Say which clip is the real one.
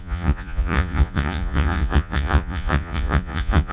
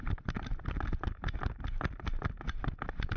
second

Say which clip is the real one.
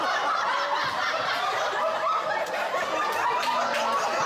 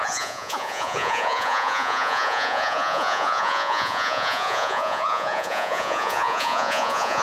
first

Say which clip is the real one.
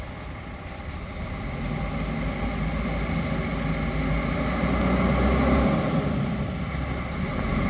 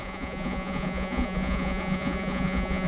first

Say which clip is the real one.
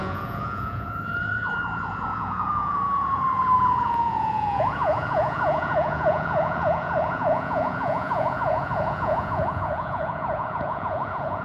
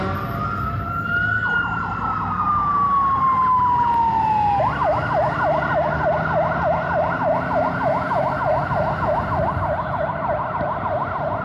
second